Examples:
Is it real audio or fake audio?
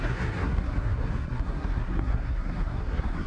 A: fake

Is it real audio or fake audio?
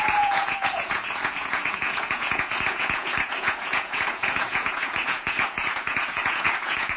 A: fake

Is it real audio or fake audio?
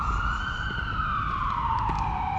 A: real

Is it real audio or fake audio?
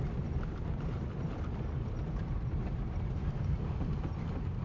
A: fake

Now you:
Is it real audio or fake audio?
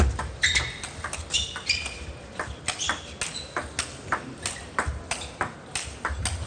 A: real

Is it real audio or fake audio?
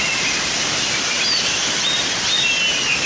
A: real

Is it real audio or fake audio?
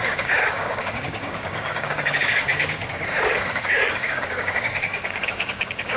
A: fake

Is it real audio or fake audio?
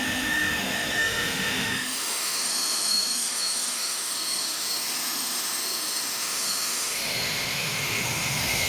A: fake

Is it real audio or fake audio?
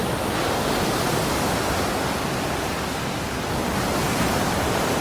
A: real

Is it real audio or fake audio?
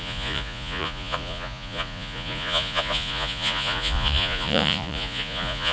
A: fake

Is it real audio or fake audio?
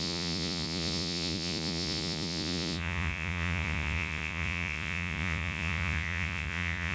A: fake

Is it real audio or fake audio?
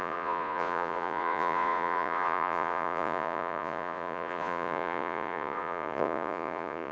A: fake